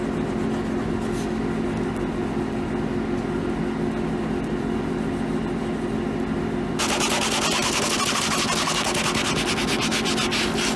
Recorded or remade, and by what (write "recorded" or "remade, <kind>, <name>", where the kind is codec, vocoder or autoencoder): recorded